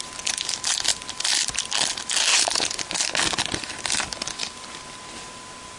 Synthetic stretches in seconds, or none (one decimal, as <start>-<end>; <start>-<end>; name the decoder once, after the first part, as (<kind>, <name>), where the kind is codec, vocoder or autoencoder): 2.3-2.9 (vocoder, BigVGAN v2)